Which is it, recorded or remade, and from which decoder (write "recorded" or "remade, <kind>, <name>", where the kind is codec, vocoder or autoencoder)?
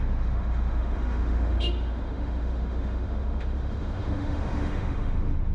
remade, autoencoder, DAC-VAE